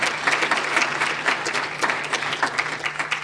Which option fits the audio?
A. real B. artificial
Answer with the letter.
A